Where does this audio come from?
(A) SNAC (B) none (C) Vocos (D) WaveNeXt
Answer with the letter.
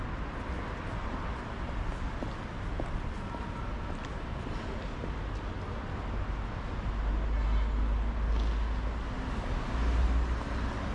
B